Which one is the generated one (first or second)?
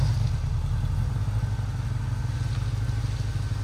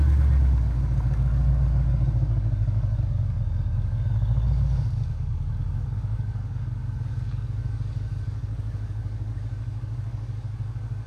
second